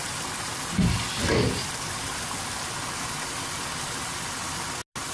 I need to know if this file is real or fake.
real